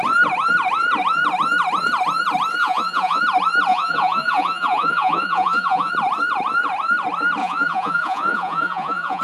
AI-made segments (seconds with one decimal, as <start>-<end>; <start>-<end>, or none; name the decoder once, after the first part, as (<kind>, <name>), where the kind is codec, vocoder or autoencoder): 2.6-3.2 (vocoder, Vocos); 3.7-5.9; 7.4-9.2